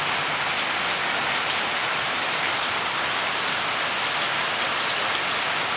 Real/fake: real